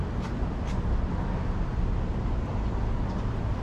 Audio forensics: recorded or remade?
recorded